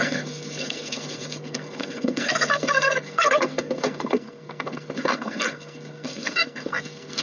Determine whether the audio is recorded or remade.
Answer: remade